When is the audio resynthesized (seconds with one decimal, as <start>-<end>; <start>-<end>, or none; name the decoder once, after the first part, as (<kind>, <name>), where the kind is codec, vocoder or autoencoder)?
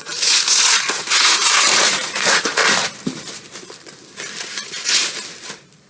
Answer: 0.0-2.6 (vocoder, Vocos); 4.4-5.0